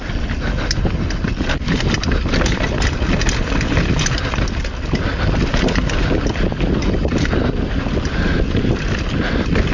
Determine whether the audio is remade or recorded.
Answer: recorded